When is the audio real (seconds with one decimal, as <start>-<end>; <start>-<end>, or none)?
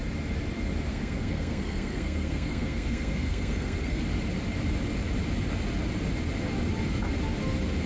0.0-0.9; 4.0-7.9